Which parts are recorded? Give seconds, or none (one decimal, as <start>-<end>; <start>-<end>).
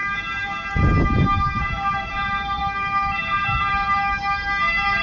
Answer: 0.0-1.6; 2.6-5.0